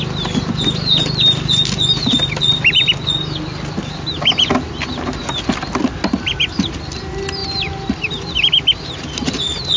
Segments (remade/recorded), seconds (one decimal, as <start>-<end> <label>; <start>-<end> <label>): 0.0-9.8 recorded